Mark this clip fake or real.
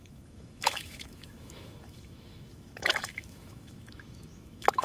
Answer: fake